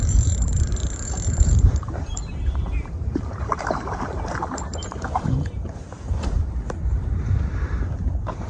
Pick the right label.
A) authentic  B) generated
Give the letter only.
B